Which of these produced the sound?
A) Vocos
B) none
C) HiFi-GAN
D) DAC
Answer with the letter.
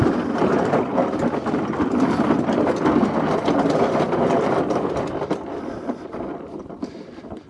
B